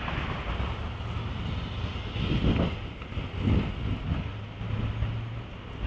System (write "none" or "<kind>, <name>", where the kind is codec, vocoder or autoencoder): none